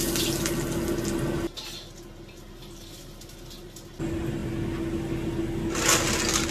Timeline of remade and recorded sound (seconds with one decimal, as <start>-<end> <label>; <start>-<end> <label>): 0.0-6.5 recorded